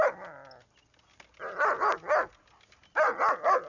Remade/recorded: recorded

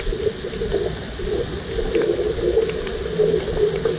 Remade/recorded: recorded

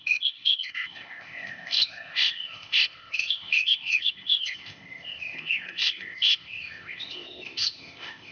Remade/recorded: remade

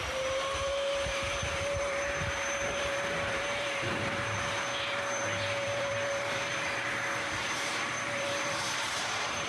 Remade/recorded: remade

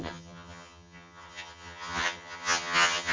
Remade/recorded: remade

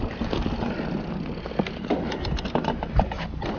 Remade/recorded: recorded